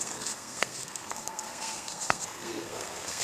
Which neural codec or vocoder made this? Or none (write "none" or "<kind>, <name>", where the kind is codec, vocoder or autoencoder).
codec, SNAC